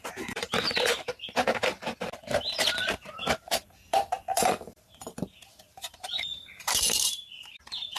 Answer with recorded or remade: remade